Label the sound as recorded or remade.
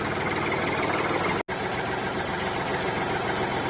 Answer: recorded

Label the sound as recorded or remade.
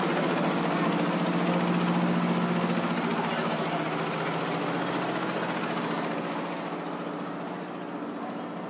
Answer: recorded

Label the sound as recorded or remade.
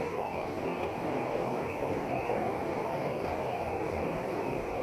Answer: remade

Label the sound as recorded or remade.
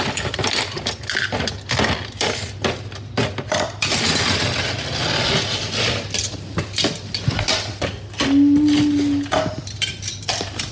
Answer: recorded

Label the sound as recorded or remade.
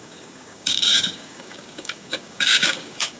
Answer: remade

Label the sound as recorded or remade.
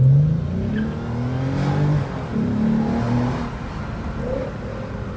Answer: recorded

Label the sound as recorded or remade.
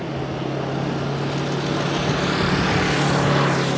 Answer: recorded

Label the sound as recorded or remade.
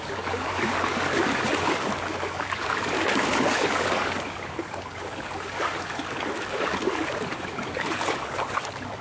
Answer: remade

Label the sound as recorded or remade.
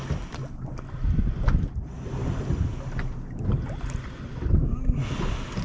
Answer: recorded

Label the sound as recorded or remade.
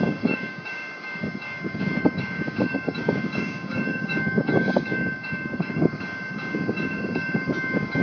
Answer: remade